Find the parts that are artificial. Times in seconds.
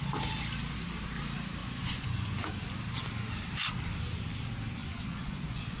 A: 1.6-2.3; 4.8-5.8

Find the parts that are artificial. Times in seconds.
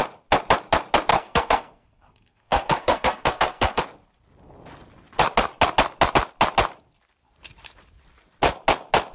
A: 1.1-3.8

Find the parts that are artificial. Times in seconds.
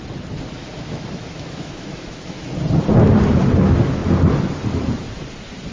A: 0.6-2.5